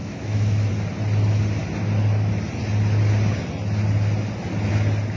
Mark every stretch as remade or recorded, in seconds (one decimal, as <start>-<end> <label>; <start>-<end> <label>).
0.0-0.7 remade; 0.7-5.2 recorded